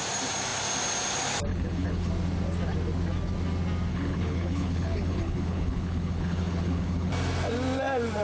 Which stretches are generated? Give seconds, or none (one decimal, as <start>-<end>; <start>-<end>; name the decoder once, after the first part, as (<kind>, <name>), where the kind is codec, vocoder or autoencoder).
1.5-2.1 (codec, HILCodec); 3.9-7.1